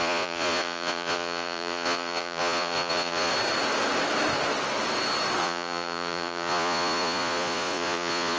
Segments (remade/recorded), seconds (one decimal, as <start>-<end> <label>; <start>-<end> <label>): 0.0-3.3 remade; 3.3-5.4 recorded; 5.4-8.4 remade